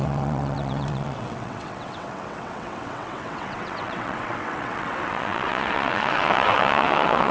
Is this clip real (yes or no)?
no